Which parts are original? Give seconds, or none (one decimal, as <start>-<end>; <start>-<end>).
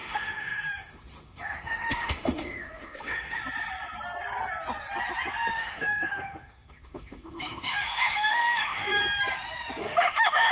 3.4-5.5; 9.0-9.8